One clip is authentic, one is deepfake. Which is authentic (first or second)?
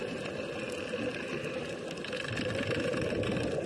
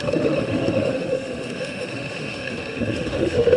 first